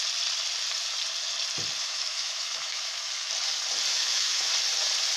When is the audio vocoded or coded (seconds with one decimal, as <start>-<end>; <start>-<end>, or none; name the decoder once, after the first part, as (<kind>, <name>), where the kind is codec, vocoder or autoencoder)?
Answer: 1.8-3.3 (autoencoder, DAC-VAE); 3.9-4.5